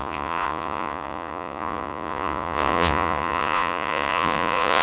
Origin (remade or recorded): remade